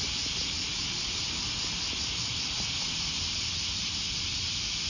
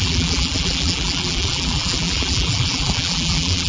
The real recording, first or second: first